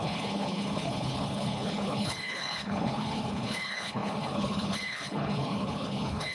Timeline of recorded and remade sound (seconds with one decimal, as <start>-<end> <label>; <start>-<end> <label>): 0.0-6.3 remade